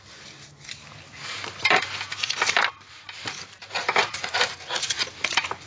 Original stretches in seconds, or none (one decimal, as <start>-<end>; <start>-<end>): 0.0-5.7